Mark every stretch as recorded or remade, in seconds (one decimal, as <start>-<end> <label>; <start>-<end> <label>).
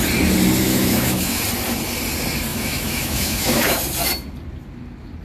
0.0-0.7 recorded; 0.7-1.4 remade; 1.4-2.5 recorded; 2.5-3.8 remade; 3.8-5.2 recorded